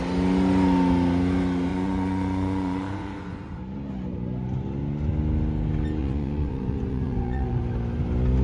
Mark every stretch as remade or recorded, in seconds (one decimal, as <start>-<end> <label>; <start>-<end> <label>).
0.0-1.7 recorded; 1.7-3.6 remade; 3.6-6.0 recorded; 6.0-7.6 remade; 7.6-8.4 recorded